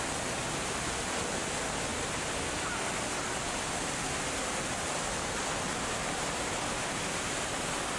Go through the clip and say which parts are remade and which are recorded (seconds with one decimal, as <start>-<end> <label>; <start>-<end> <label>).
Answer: 0.0-8.0 recorded